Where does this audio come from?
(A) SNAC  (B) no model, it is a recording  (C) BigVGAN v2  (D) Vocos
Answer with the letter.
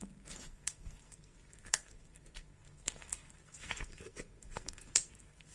A